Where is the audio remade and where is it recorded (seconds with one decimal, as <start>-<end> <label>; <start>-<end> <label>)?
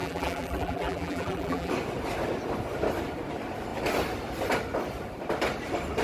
0.0-1.7 remade; 1.7-6.0 recorded